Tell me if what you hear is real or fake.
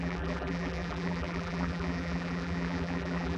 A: fake